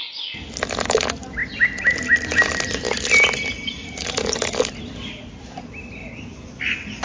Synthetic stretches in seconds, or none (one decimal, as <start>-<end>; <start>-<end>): none